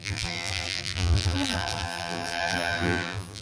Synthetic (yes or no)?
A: yes